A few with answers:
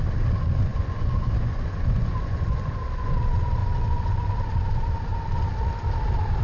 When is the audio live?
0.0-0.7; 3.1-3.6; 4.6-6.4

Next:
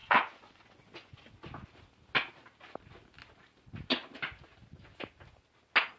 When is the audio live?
1.3-6.0

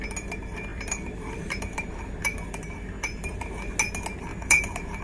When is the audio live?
0.0-0.7; 3.7-4.3